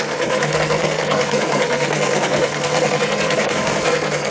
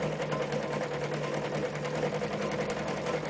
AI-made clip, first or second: first